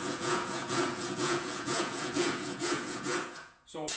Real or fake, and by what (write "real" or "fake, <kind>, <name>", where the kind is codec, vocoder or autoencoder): fake, vocoder, Vocos